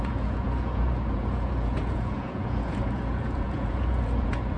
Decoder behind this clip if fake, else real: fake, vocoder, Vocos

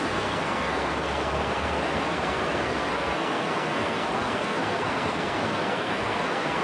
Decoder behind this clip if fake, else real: fake, codec, SNAC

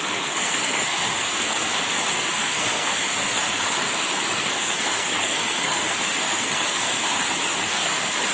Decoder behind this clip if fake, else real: fake, codec, SNAC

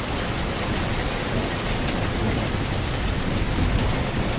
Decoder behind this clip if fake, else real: real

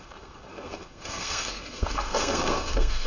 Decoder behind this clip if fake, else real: fake, codec, SNAC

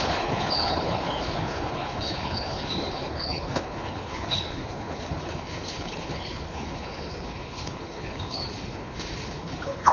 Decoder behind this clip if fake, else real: fake, codec, HILCodec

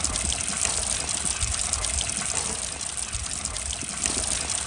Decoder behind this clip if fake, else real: real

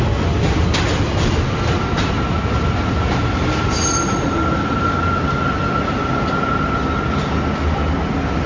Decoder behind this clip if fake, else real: real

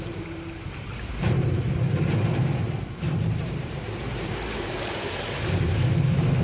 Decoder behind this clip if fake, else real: fake, vocoder, BigVGAN v2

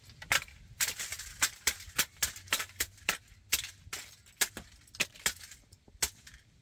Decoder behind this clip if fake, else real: real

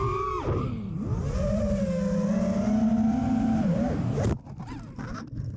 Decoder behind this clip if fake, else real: real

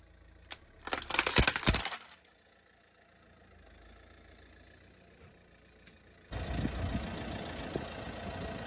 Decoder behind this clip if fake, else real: real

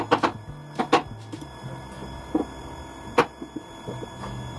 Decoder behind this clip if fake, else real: real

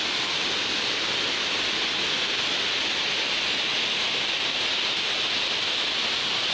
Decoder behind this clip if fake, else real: real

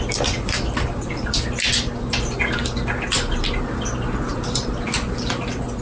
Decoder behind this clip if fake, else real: real